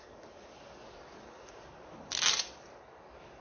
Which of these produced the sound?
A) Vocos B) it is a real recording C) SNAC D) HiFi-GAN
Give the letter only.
B